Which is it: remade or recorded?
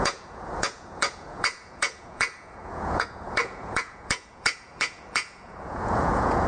remade